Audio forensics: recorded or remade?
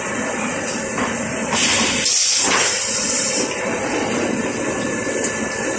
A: recorded